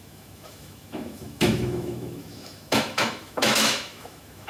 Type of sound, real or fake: fake